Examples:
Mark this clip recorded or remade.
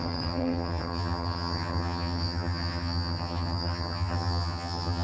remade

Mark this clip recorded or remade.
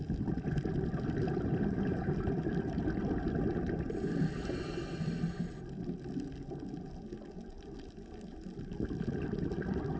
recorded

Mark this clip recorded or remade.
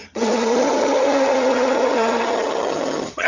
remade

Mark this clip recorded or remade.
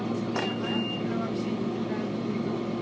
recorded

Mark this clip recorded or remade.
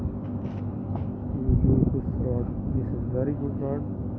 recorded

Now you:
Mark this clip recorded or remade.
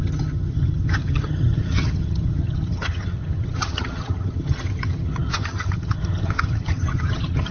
remade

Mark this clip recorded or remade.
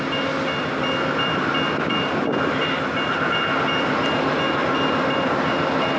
recorded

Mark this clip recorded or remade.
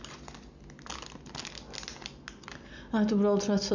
recorded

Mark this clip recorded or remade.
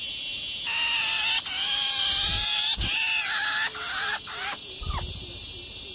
recorded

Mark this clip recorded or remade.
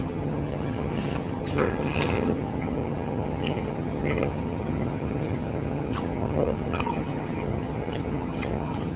remade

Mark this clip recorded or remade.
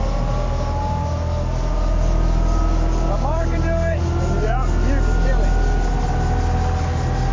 recorded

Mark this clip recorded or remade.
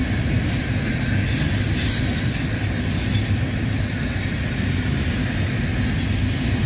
recorded